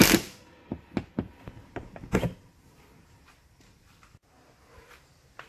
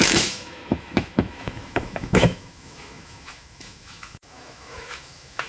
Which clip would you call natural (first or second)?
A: first